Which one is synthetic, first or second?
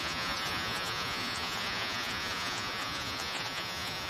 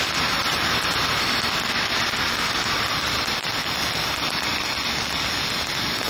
first